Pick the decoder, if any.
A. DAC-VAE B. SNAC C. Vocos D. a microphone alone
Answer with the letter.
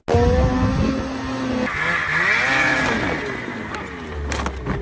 D